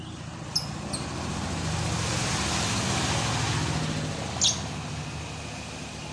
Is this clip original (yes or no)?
yes